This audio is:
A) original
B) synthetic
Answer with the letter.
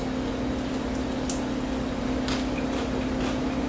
A